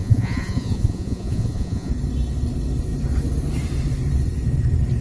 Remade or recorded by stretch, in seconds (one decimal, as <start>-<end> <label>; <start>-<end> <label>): 0.0-1.9 remade; 1.9-5.0 recorded